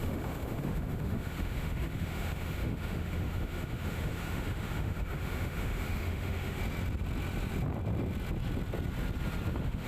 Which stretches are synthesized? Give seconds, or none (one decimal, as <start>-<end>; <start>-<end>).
0.0-6.6; 9.5-9.9